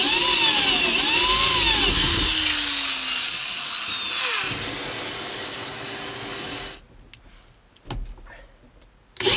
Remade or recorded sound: recorded